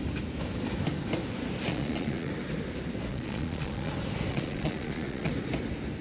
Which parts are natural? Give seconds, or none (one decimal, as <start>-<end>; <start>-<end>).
0.0-1.7; 2.3-3.1; 3.9-4.3; 5.3-6.0